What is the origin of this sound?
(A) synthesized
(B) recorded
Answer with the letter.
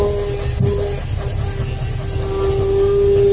B